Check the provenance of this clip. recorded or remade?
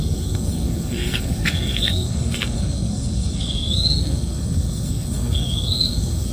remade